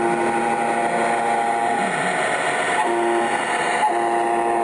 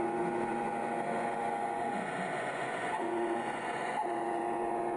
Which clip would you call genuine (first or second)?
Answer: first